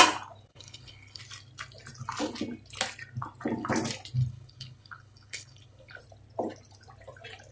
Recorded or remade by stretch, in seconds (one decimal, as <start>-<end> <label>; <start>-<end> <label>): 0.0-0.5 recorded; 0.5-1.2 remade; 1.2-4.3 recorded; 4.3-6.0 remade; 6.0-7.5 recorded